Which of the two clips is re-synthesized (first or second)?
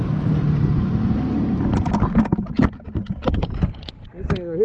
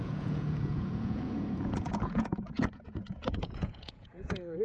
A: second